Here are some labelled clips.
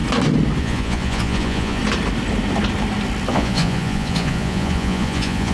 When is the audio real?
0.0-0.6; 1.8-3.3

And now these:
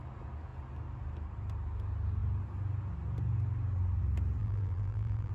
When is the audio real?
0.0-4.4

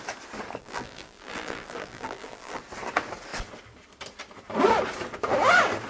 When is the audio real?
0.0-0.6; 2.6-5.9